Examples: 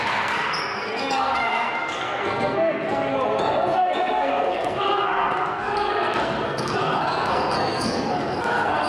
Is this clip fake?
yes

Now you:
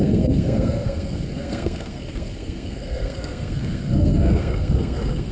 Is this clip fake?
yes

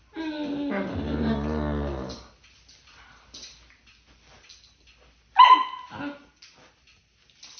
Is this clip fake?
no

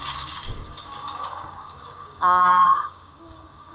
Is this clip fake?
yes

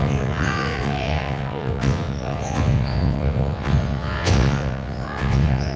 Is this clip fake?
yes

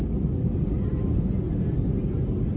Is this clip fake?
no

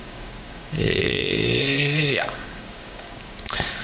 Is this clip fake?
yes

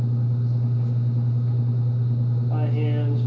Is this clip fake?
no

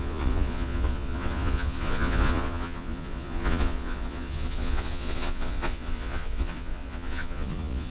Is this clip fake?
yes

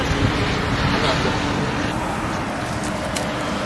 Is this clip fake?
no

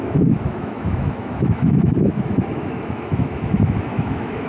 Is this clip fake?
yes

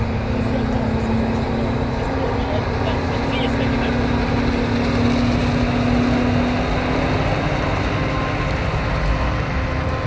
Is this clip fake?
no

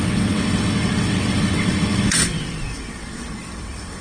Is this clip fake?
yes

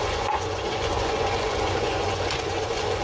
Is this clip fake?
yes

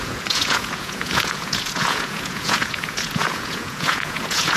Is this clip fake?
yes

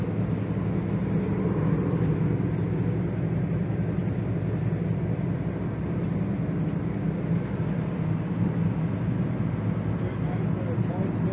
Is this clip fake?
no